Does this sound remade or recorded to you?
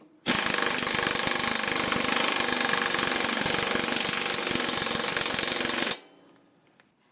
recorded